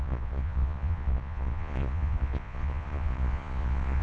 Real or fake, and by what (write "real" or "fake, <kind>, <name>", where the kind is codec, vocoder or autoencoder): fake, vocoder, Vocos